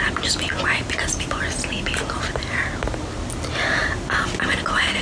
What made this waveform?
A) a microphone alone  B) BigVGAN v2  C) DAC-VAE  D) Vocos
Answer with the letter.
A